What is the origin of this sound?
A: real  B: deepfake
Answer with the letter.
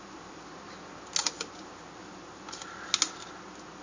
A